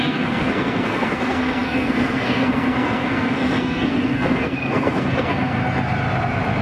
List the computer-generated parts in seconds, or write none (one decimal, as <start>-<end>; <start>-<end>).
0.0-5.6

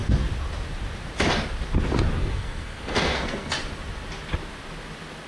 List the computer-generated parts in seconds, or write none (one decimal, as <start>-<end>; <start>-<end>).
2.2-3.5

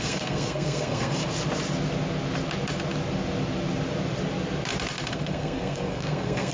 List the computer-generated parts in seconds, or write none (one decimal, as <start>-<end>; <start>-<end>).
0.0-1.2; 5.1-6.5

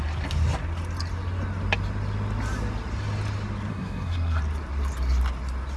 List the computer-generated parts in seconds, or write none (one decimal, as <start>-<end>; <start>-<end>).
3.7-4.4

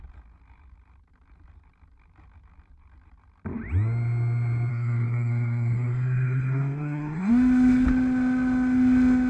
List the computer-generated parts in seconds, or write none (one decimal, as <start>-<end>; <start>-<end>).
4.7-7.3